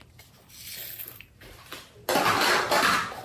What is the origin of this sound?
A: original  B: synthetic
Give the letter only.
A